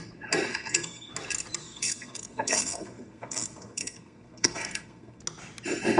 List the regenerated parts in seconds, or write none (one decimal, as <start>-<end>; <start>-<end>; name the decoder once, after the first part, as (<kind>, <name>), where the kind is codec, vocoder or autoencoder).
0.5-1.1 (codec, SNAC); 1.6-5.2